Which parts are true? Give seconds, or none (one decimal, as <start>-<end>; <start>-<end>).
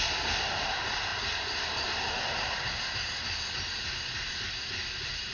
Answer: 0.0-5.3